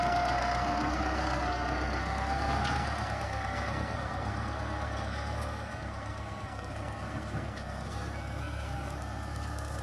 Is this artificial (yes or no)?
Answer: yes